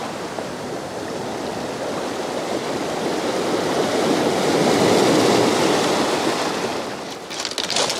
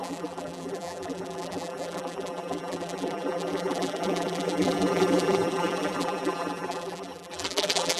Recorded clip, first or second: first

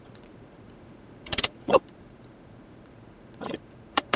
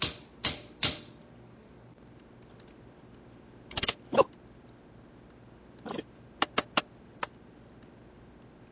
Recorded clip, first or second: second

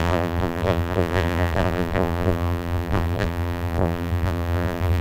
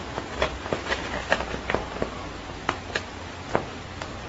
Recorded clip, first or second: second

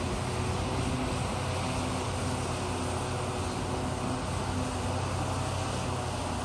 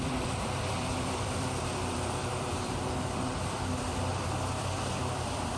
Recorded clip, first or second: first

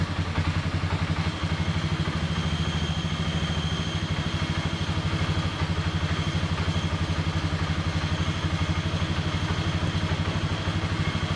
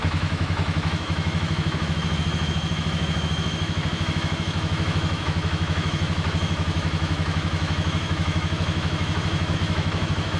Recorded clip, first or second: first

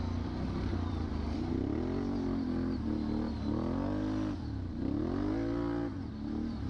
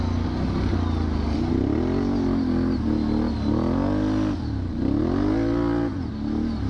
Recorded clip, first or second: second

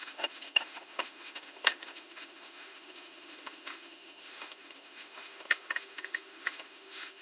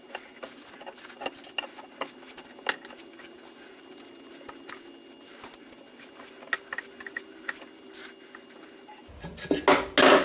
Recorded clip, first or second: second